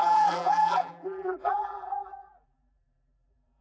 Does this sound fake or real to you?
fake